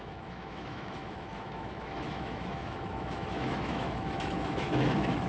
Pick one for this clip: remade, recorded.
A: remade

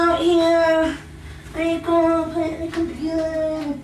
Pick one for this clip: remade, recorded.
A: recorded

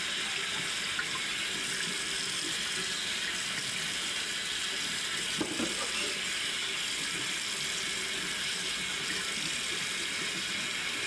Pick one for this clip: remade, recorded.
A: recorded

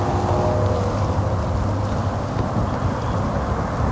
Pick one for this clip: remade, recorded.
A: recorded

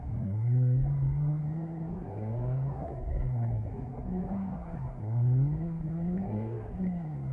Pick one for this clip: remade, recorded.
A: remade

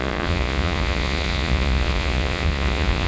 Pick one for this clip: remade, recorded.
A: remade